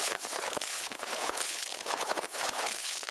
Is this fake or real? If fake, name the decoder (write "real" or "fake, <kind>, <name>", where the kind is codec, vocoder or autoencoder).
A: fake, codec, HILCodec